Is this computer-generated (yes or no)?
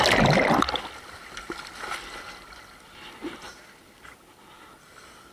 no